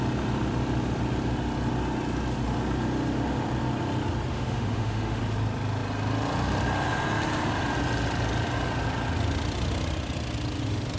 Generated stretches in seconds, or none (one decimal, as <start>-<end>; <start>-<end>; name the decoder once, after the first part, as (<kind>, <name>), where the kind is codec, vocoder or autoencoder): 4.3-5.2 (autoencoder, DAC-VAE)